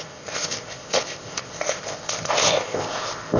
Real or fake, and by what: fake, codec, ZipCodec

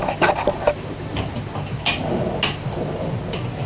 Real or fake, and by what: real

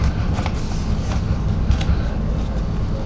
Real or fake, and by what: real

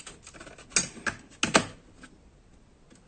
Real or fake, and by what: real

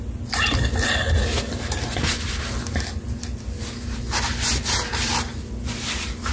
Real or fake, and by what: real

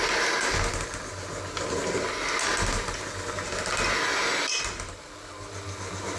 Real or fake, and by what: real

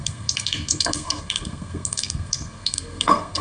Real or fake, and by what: fake, codec, SNAC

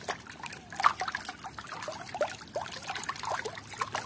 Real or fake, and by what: real